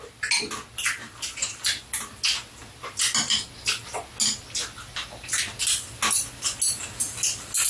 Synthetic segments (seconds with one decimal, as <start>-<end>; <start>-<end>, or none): none